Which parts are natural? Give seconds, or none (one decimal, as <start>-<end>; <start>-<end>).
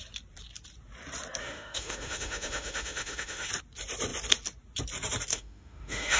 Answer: 0.0-1.4; 3.5-5.3